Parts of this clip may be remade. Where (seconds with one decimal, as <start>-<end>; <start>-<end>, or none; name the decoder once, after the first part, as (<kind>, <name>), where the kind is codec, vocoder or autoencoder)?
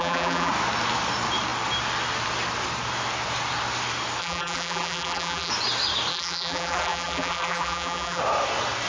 0.0-0.5 (vocoder, BigVGAN v2); 4.2-5.5; 6.1-8.2